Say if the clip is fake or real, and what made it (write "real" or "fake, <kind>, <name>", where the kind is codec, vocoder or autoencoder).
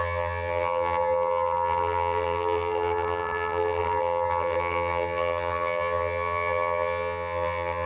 fake, vocoder, HiFi-GAN